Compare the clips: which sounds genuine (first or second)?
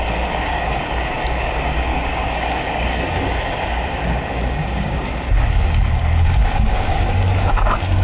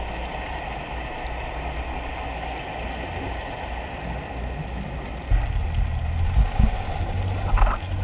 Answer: second